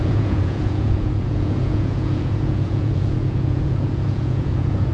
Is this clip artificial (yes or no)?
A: yes